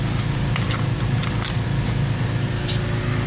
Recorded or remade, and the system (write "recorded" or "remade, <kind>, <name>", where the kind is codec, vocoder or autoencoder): recorded